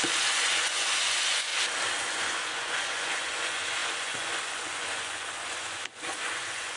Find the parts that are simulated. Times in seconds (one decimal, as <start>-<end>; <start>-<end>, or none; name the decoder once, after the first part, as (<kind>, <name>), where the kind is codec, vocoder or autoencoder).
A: 0.0-1.5 (vocoder, Vocos); 2.0-6.8